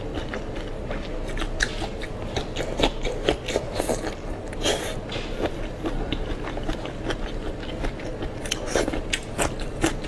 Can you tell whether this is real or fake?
real